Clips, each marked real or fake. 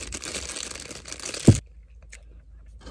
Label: real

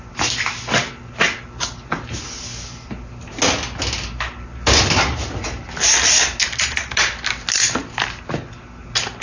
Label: real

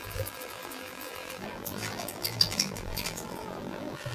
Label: fake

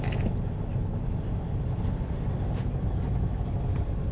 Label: real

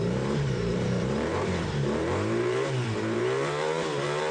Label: fake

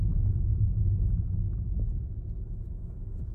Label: real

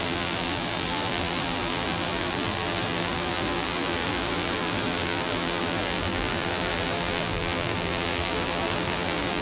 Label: fake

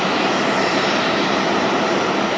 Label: real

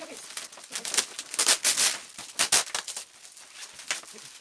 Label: real